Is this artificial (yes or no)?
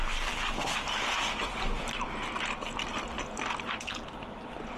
no